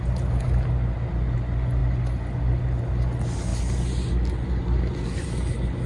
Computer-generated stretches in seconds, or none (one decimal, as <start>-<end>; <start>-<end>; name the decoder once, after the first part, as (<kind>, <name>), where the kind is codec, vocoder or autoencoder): none